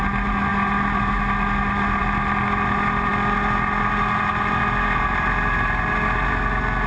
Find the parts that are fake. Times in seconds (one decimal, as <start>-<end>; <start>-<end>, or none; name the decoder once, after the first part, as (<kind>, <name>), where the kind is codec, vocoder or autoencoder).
none